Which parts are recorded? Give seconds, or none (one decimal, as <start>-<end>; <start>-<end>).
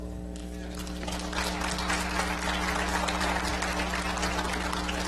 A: 0.0-5.1